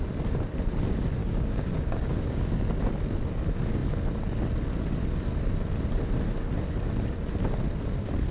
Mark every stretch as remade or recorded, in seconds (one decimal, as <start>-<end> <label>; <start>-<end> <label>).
0.0-1.2 recorded; 1.2-2.8 remade; 2.8-8.3 recorded